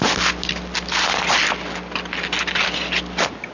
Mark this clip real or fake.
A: real